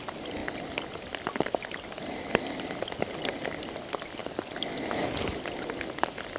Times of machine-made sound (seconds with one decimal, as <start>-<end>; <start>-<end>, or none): 4.2-4.7